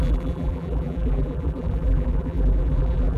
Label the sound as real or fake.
fake